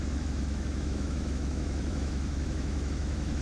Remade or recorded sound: remade